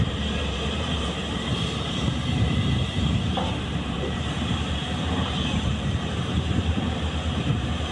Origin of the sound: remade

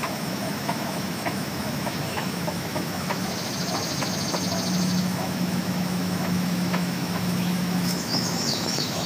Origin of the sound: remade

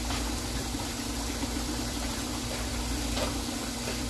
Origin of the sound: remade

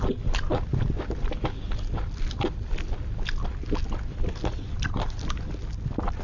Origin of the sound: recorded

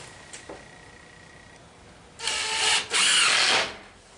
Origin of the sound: recorded